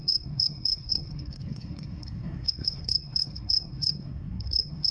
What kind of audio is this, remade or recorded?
remade